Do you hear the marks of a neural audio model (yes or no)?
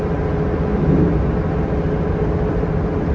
no